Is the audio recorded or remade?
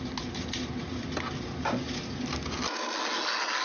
recorded